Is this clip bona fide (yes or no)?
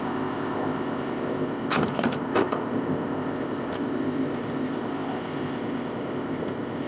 no